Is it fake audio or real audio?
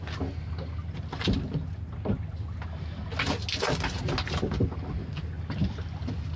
real